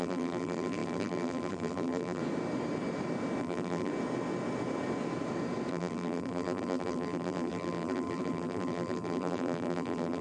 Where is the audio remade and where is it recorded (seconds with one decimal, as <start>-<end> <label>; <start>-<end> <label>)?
0.0-2.2 remade; 2.2-3.4 recorded; 3.4-3.9 remade; 3.9-5.7 recorded; 5.7-10.2 remade